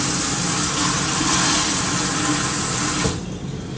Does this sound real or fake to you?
real